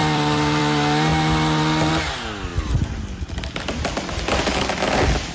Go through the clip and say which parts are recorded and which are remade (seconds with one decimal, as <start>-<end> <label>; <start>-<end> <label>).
0.0-0.6 remade; 0.6-1.1 recorded; 1.1-1.9 remade; 1.9-5.3 recorded